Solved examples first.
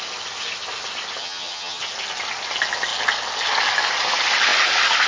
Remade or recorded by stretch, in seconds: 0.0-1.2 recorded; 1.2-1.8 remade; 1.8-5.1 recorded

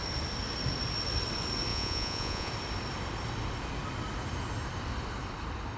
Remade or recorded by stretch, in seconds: 0.0-1.7 recorded; 1.7-2.5 remade; 2.5-5.8 recorded

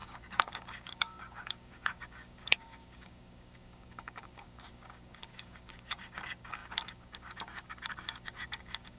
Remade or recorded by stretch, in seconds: 0.0-9.0 remade

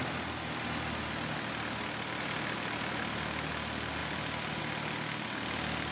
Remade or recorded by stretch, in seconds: 0.0-5.9 recorded

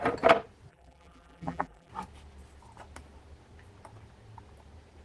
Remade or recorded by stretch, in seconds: 0.0-0.7 recorded; 0.7-1.9 remade; 1.9-5.0 recorded

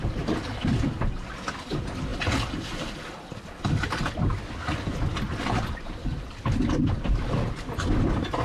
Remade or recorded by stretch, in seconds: 0.0-8.4 recorded

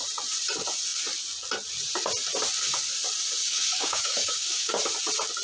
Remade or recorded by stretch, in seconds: 0.0-3.4 recorded; 3.4-4.7 remade; 4.7-5.4 recorded

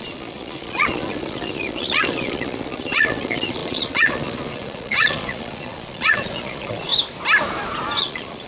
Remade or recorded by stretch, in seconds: 0.0-6.9 remade; 6.9-8.0 recorded; 8.0-8.5 remade